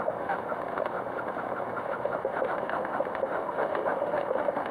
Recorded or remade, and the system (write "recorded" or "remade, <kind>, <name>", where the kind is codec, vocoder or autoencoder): remade, autoencoder, DAC-VAE